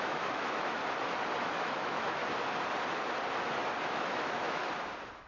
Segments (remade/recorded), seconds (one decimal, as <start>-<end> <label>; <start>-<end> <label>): 0.0-0.8 remade; 0.8-1.5 recorded; 1.5-2.2 remade; 2.2-3.9 recorded; 3.9-4.6 remade; 4.6-5.3 recorded